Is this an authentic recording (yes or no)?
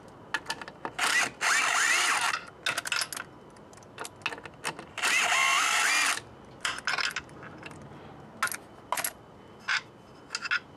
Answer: yes